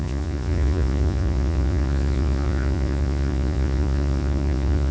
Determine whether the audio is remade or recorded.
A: remade